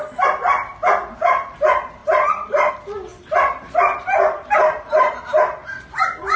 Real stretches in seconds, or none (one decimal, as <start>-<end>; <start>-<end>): 0.0-2.0; 2.7-3.1; 5.4-6.4